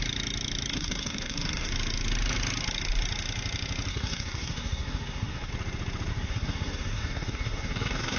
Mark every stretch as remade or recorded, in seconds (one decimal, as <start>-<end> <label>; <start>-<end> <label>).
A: 0.0-0.7 recorded; 0.7-1.7 remade; 1.7-3.9 recorded; 3.9-5.5 remade; 5.5-6.1 recorded; 6.1-8.2 remade